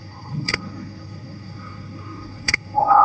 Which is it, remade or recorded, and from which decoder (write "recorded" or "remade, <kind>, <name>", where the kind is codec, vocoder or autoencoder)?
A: remade, codec, SNAC